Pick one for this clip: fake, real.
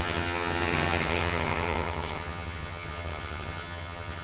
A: fake